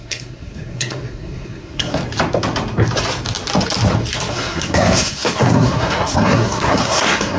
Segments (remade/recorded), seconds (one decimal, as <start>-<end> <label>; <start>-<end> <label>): 0.0-2.0 remade; 2.0-4.3 recorded; 4.3-7.4 remade